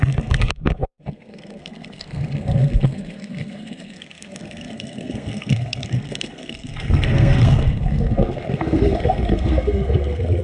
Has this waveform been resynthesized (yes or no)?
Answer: yes